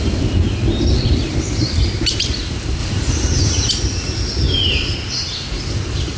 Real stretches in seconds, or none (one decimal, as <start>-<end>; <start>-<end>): 0.0-1.3; 2.2-2.8; 3.7-6.2